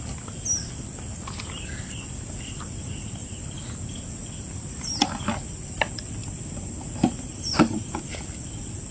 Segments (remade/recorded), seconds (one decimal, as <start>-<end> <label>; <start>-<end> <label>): 0.0-6.2 recorded; 6.2-7.5 remade; 7.5-8.9 recorded